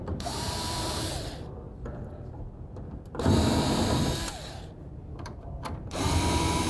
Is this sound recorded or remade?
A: remade